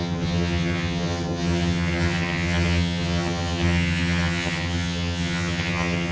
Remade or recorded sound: remade